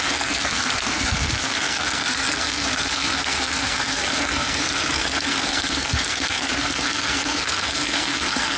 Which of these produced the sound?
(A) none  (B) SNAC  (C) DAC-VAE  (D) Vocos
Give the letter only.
B